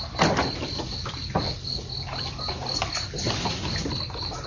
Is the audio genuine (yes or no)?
yes